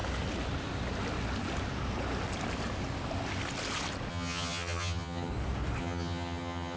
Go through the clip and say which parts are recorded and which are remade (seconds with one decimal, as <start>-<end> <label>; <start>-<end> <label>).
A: 0.0-4.1 recorded; 4.1-5.3 remade; 5.3-5.8 recorded; 5.8-6.8 remade